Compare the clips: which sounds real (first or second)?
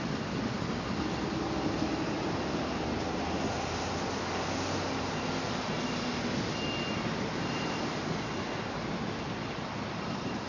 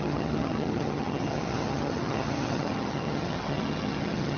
first